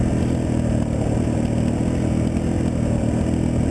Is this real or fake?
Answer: real